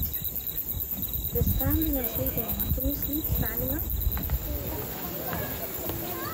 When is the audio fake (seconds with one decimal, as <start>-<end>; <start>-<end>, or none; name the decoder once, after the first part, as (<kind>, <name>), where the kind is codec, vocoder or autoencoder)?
1.5-2.7 (autoencoder, DAC-VAE)